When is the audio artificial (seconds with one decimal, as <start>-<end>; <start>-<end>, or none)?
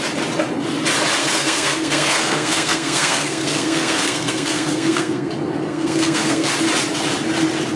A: 1.2-5.3; 5.7-6.5